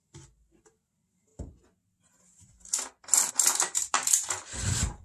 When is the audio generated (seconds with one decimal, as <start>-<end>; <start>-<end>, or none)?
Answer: 0.0-1.3; 3.3-5.0